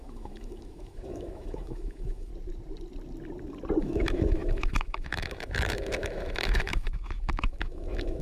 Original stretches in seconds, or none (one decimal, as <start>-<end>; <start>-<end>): 2.3-3.8